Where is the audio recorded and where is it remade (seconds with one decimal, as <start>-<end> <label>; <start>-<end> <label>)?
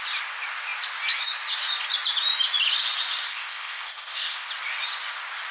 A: 0.0-3.3 recorded; 3.3-4.5 remade; 4.5-5.5 recorded